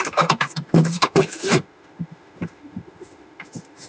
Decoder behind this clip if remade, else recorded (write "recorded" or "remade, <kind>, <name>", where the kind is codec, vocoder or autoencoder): remade, autoencoder, DAC-VAE